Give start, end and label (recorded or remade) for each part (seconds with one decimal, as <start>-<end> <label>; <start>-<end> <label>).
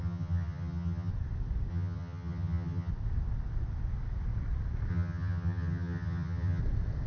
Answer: 0.0-1.1 remade; 1.1-1.7 recorded; 1.7-2.9 remade; 2.9-4.9 recorded; 4.9-6.6 remade; 6.6-7.1 recorded